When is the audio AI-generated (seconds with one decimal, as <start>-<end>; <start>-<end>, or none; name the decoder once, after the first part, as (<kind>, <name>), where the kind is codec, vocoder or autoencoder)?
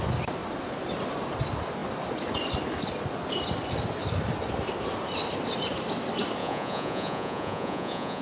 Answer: 6.4-8.2 (vocoder, Vocos)